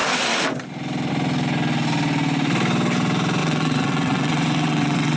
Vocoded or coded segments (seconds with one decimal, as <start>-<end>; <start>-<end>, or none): 3.4-5.2